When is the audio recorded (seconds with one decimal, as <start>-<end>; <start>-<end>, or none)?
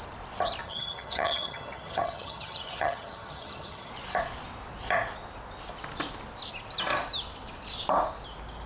0.0-0.6; 3.9-8.7